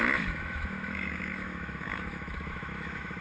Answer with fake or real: fake